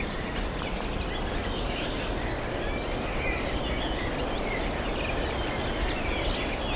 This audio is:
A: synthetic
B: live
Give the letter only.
B